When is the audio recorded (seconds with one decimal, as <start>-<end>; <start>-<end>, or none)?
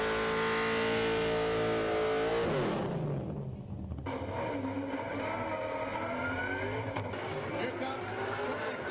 0.0-8.9